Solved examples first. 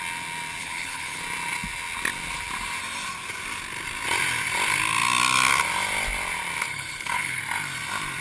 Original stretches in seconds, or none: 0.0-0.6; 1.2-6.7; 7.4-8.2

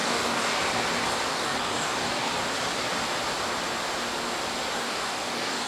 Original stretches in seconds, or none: 0.6-1.3; 2.3-4.8

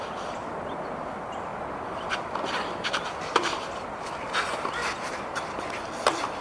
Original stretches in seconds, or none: 1.5-2.9